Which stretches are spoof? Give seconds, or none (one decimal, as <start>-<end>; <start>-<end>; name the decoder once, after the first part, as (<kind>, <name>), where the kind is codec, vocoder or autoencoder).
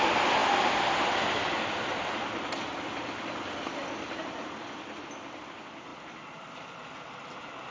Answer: none